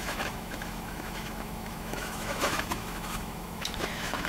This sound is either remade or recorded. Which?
remade